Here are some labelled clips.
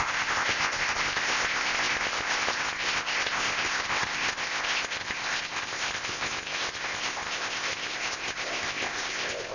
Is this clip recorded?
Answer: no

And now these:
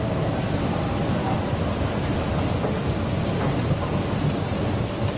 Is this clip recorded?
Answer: yes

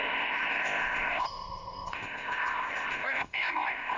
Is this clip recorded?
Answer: no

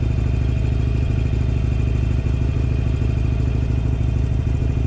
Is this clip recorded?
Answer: yes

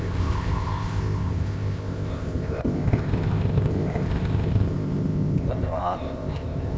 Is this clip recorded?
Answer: no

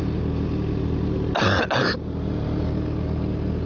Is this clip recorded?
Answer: yes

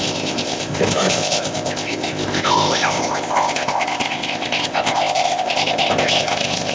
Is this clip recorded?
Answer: no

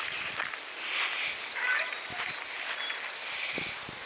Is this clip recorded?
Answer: yes